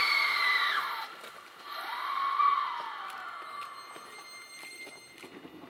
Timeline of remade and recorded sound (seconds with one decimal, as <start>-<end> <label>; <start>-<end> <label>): 0.0-2.1 remade; 2.1-5.7 recorded